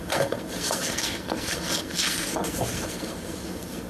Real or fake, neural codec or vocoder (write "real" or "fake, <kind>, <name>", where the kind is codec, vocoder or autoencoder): fake, codec, SNAC